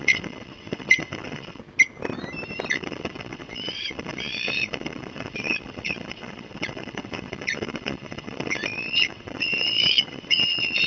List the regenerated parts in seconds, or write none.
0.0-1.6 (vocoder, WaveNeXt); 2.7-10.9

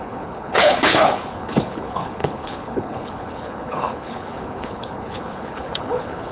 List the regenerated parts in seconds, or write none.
0.0-6.3 (codec, HILCodec)

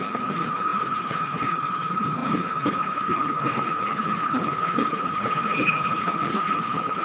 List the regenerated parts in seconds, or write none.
0.0-7.0 (codec, HILCodec)

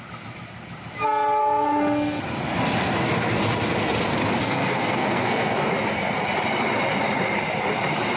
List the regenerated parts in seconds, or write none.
1.4-2.2 (codec, SNAC); 4.4-5.7